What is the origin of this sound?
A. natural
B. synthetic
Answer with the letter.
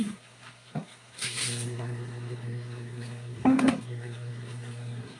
B